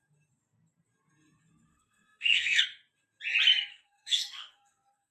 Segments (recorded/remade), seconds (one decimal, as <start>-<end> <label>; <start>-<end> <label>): 0.0-1.7 recorded; 1.7-2.6 remade; 2.6-3.7 recorded; 3.7-5.1 remade